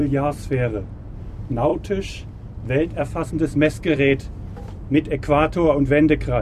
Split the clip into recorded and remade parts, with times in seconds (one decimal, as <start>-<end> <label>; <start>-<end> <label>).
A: 0.0-6.4 remade